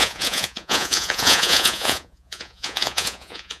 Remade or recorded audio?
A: remade